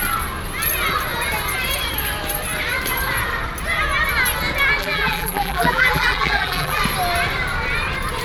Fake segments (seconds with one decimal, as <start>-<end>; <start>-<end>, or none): 4.8-6.8